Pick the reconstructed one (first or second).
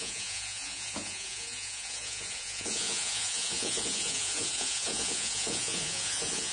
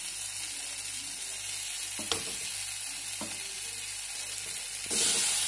first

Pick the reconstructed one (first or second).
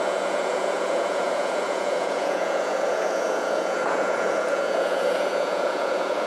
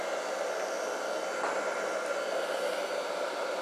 first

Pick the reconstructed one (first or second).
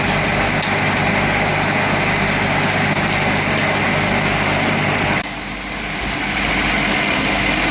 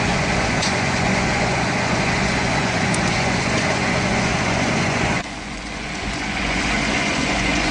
second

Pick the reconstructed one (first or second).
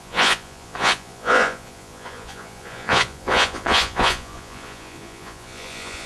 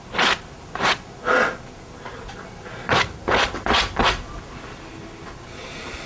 first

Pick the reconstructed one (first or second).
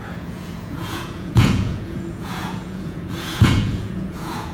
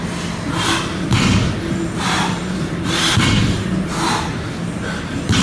first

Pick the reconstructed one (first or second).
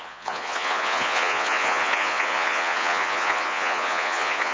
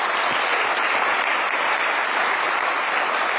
first